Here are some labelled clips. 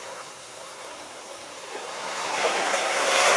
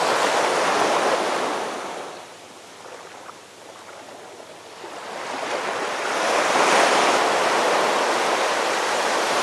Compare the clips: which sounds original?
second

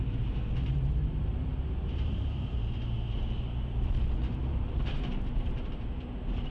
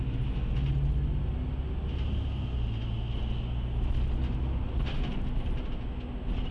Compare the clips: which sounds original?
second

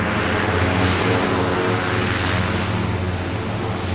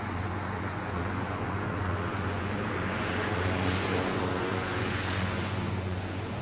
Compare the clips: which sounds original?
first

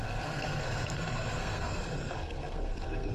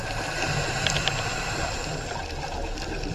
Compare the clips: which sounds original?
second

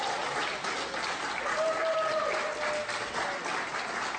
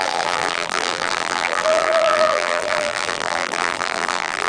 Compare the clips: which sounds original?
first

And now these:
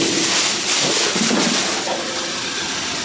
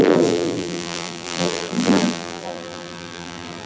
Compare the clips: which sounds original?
first